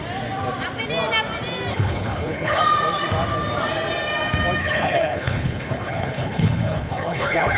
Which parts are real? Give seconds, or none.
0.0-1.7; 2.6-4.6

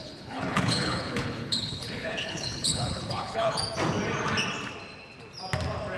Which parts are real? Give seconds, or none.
3.6-6.0

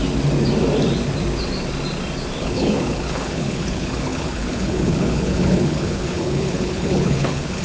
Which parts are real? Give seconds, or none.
0.0-2.4

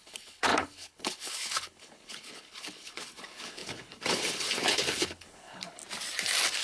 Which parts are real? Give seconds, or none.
5.8-6.6

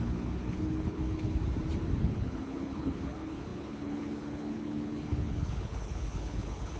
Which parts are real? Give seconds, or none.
1.4-2.0

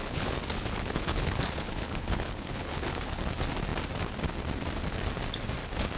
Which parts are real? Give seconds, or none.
3.2-6.0

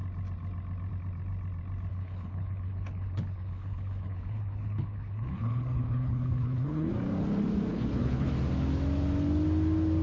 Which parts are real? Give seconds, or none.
0.0-1.9; 6.9-7.7; 8.3-10.0